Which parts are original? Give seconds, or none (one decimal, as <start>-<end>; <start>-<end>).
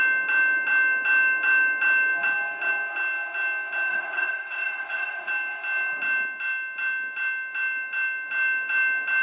0.0-3.9; 5.3-9.2